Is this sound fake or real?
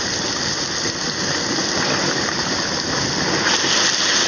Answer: real